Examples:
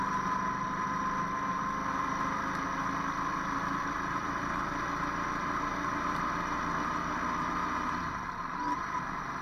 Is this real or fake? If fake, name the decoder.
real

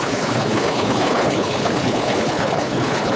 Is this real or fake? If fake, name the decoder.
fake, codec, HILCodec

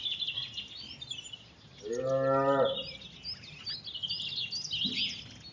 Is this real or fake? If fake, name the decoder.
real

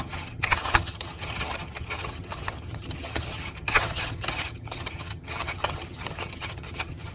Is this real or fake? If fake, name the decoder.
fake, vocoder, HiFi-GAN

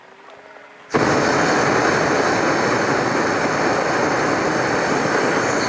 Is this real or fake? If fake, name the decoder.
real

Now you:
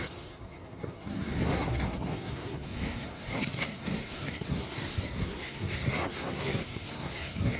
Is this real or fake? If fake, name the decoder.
fake, codec, SNAC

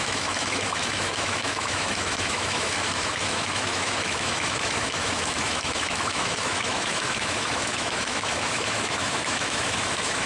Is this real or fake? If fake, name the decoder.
fake, autoencoder, DAC-VAE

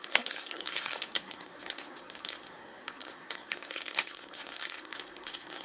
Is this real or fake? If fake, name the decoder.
fake, codec, SNAC